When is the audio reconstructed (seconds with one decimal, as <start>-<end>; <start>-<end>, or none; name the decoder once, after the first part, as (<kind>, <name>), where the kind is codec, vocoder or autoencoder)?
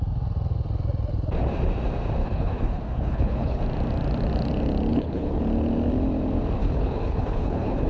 2.2-3.6 (codec, HILCodec); 4.9-5.4; 6.6-7.9